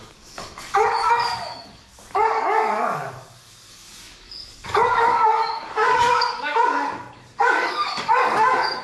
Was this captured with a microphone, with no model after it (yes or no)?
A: no